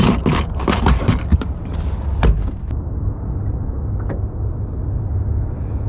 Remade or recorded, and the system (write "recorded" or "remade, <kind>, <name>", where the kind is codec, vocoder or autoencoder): recorded